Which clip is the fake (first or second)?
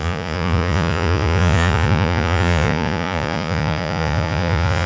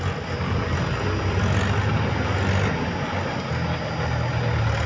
first